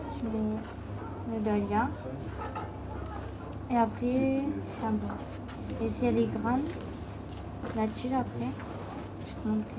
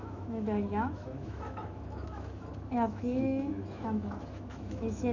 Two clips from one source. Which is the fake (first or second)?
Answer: second